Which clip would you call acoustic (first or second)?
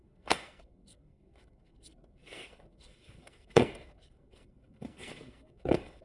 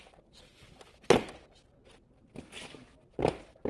second